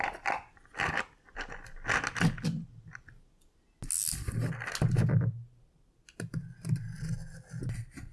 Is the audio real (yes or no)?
yes